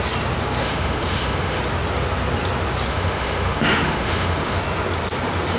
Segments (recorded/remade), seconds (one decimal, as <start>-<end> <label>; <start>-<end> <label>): 0.0-0.6 recorded; 0.6-1.6 remade; 1.6-2.9 recorded; 2.9-4.6 remade; 4.6-5.6 recorded